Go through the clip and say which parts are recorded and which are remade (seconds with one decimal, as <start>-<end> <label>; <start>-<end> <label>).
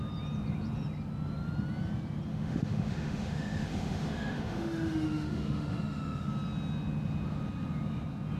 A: 0.0-2.3 recorded; 2.3-6.3 remade; 6.3-8.4 recorded